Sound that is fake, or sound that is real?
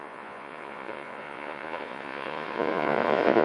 fake